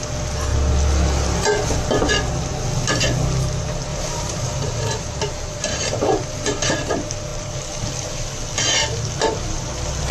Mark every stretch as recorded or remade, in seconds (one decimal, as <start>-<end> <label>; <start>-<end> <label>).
0.0-3.9 recorded; 3.9-6.7 remade; 6.7-10.1 recorded